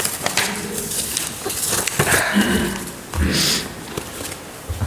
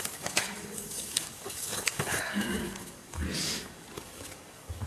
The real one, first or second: first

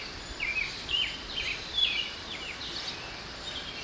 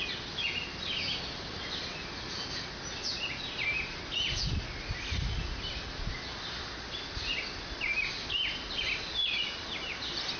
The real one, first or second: second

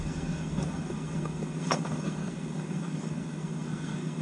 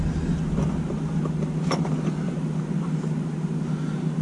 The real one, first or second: second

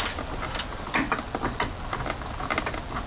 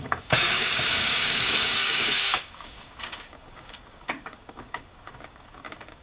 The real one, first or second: first